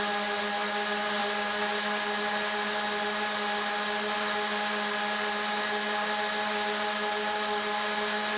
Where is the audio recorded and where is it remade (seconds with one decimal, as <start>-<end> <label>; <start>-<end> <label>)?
0.0-8.4 recorded

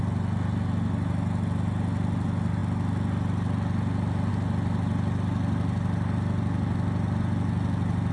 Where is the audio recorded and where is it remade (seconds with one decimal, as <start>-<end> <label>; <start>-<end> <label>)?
0.0-8.1 recorded

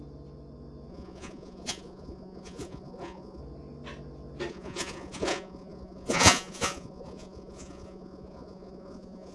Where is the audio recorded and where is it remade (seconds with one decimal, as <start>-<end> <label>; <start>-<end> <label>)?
0.0-0.9 recorded; 0.9-3.4 remade; 3.4-4.5 recorded; 4.5-9.3 remade

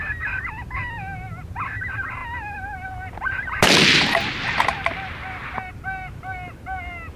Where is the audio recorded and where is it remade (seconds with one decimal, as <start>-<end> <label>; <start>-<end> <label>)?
0.0-7.2 recorded

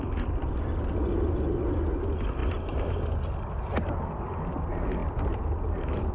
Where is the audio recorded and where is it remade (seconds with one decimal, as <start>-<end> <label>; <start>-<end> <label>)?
0.0-6.1 recorded